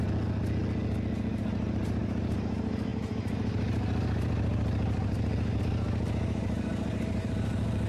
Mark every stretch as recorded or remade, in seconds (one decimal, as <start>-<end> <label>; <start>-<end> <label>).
0.0-1.4 recorded; 1.4-7.9 remade